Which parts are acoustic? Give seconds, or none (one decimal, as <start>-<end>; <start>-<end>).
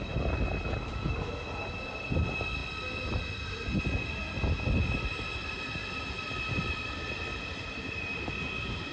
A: 0.0-5.8; 8.2-8.9